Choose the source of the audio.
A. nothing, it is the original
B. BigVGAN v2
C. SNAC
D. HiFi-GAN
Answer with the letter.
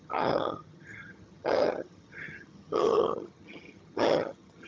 D